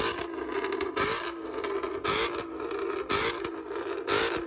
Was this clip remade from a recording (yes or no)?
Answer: no